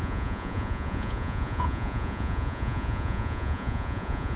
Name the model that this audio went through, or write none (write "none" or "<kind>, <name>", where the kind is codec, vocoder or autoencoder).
vocoder, Vocos